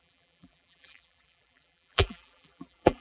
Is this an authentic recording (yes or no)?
no